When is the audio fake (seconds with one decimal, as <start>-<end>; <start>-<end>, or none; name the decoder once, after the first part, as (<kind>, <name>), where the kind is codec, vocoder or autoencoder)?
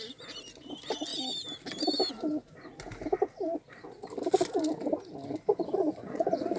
5.5-6.6 (vocoder, Vocos)